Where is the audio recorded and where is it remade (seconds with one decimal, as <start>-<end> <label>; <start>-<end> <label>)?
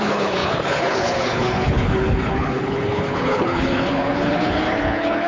0.0-5.3 remade